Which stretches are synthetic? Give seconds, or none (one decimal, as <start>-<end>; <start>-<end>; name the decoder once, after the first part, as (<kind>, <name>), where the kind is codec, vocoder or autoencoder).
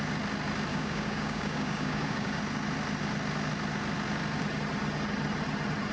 0.7-2.4 (codec, DAC)